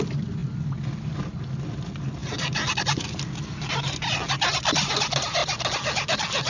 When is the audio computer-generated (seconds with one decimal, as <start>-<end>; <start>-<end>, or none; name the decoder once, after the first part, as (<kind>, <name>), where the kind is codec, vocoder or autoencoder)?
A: none